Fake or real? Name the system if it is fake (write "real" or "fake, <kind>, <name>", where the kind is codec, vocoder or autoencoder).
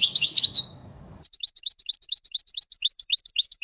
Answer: fake, codec, DAC